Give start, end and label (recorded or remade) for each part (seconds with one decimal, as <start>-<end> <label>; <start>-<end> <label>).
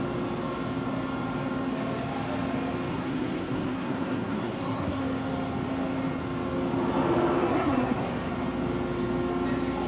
0.0-2.9 recorded; 2.9-5.0 remade; 5.0-7.5 recorded; 7.5-8.1 remade; 8.1-9.9 recorded